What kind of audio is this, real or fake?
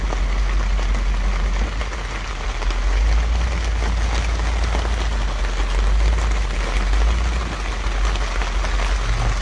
real